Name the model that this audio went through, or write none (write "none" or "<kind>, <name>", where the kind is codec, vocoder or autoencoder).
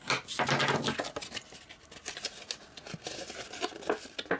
none